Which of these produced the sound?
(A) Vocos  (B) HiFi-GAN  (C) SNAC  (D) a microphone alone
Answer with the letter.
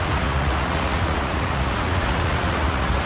A